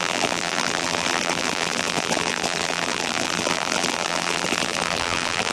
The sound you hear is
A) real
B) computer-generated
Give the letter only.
B